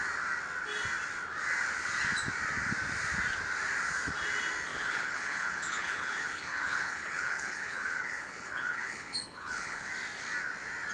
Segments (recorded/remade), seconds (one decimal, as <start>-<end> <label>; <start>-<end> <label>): 0.0-4.7 recorded; 4.7-9.9 remade; 9.9-10.9 recorded